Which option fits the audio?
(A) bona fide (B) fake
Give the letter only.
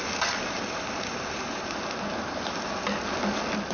A